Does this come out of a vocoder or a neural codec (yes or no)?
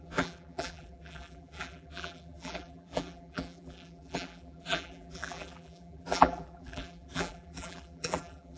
yes